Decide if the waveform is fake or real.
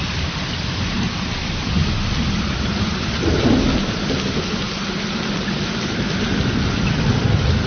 real